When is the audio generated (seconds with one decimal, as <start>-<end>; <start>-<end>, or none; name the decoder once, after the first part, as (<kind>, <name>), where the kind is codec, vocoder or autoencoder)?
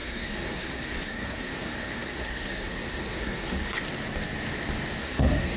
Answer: 0.0-3.8 (codec, SNAC); 5.0-5.6